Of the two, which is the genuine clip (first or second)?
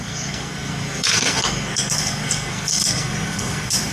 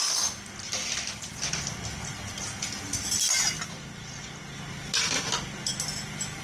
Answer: second